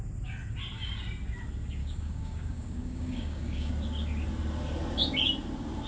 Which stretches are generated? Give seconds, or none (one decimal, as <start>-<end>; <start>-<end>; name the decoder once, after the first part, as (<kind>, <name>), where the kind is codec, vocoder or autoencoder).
1.8-3.7 (codec, DAC)